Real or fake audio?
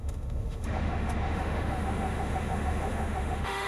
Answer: fake